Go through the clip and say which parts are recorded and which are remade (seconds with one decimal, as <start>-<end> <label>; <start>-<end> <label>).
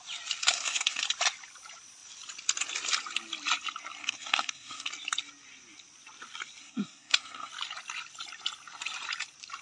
0.0-0.4 recorded; 0.4-1.0 remade; 1.0-4.0 recorded; 4.0-4.9 remade; 4.9-6.6 recorded; 6.6-7.5 remade; 7.5-9.6 recorded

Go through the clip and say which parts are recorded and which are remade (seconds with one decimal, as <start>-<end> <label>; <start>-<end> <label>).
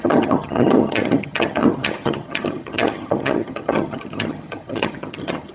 0.0-5.5 remade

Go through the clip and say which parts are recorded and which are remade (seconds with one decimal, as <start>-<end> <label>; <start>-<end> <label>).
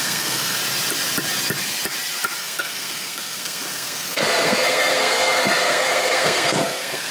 0.0-0.6 remade; 0.6-2.4 recorded; 2.4-7.1 remade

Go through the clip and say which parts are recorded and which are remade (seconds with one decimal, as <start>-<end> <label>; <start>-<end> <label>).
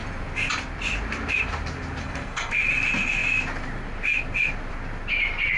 0.0-2.0 recorded; 2.0-2.5 remade; 2.5-5.6 recorded